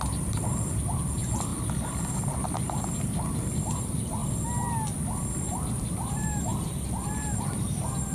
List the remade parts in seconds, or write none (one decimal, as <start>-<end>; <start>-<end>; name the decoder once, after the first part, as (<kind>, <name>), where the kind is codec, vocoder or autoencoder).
0.0-1.5 (vocoder, BigVGAN v2); 2.8-4.2; 5.4-6.5; 7.4-8.1